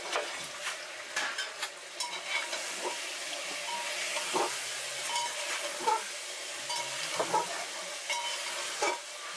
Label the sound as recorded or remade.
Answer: recorded